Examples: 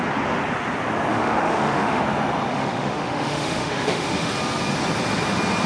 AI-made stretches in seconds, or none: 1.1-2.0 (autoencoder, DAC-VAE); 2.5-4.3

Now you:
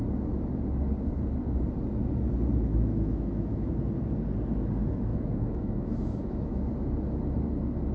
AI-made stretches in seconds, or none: 2.7-3.7 (autoencoder, DAC-VAE); 5.1-6.7